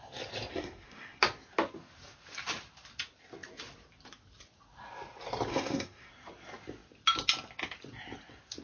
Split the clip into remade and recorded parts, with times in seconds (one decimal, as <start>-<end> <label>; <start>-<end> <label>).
0.0-0.5 recorded; 0.5-1.2 remade; 1.2-5.5 recorded; 5.5-6.1 remade; 6.1-8.6 recorded